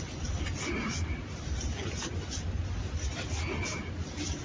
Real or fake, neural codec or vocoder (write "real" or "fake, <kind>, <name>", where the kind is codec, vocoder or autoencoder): real